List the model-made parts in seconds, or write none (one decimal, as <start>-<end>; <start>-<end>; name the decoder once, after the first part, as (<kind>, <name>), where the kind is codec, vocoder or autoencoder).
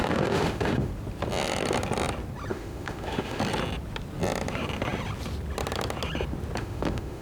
0.0-0.9 (autoencoder, DAC-VAE); 2.5-3.4; 6.6-7.2